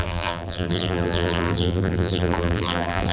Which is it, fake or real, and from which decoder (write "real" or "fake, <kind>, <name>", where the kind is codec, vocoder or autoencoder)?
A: fake, vocoder, BigVGAN v2